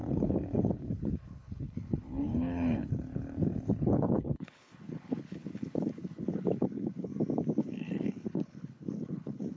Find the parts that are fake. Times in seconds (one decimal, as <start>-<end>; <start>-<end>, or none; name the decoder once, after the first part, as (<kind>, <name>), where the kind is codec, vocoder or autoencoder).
0.0-7.1 (codec, HILCodec); 7.6-9.6